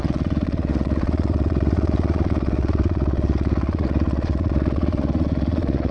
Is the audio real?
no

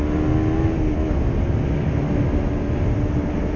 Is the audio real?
yes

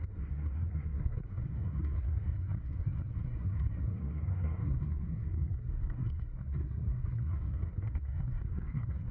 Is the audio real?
no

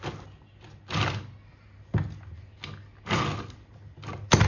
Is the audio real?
yes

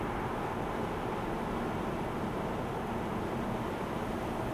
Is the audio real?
yes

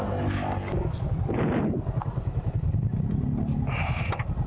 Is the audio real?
yes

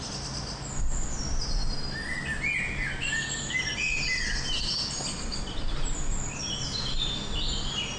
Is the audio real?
yes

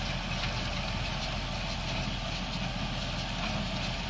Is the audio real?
yes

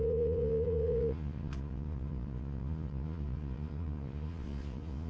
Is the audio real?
no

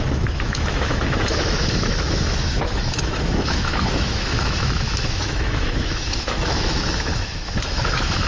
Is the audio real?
no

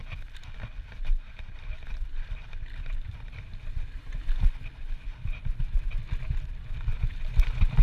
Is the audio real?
yes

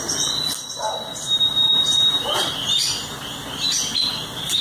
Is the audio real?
yes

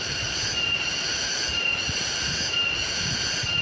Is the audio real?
yes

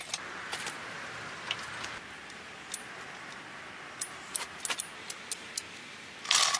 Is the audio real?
yes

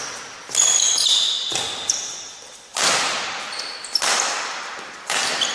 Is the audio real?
yes